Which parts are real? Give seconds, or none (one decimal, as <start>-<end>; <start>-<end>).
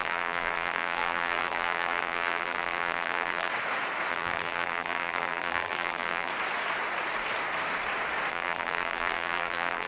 3.5-4.1; 6.3-8.3